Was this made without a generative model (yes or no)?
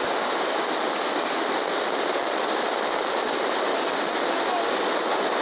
yes